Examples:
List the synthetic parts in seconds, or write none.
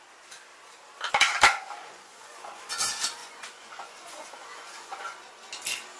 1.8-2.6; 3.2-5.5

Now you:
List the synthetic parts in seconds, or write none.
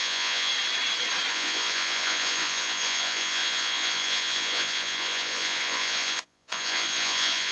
0.0-0.5; 1.3-7.5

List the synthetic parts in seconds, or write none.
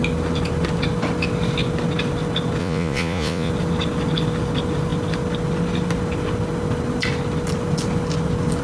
2.6-3.5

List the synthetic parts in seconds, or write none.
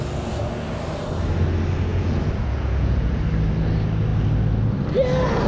1.9-3.2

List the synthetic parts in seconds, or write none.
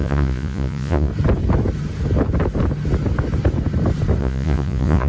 0.0-1.1; 4.2-5.1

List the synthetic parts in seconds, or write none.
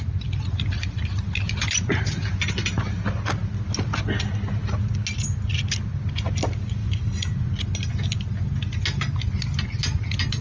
6.8-7.5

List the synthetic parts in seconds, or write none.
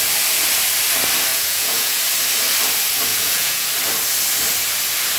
1.3-2.0; 3.1-3.7